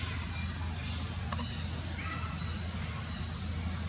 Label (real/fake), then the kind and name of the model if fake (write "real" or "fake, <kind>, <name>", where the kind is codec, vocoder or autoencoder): real